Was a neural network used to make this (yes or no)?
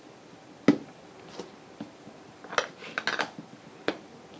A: no